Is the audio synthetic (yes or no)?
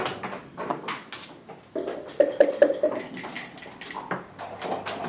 no